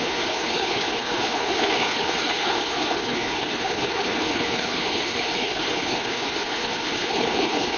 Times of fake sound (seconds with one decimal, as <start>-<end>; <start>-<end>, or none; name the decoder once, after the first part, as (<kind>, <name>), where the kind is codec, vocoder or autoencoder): 0.0-7.8 (codec, HILCodec)